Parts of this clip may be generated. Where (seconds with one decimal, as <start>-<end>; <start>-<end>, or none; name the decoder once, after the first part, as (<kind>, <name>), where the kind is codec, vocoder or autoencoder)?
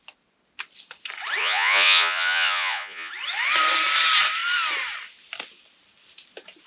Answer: 1.4-3.1 (vocoder, Vocos)